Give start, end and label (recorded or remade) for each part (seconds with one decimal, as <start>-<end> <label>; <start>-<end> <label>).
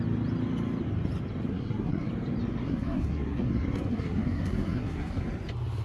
0.0-1.5 recorded; 1.5-2.1 remade; 2.1-2.6 recorded; 2.6-5.2 remade; 5.2-5.8 recorded